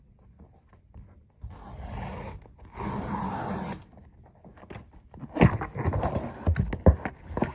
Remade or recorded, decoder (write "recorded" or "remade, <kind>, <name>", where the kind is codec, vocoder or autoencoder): recorded